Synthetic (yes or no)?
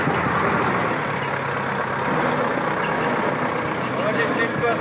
no